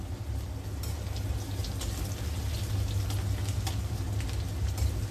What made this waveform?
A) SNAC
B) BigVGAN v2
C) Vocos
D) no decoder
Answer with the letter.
D